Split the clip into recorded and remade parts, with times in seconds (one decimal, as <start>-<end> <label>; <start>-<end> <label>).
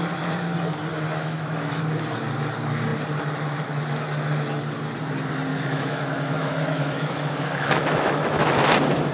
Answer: 0.0-0.9 recorded; 0.9-1.8 remade; 1.8-5.5 recorded; 5.5-8.6 remade; 8.6-9.1 recorded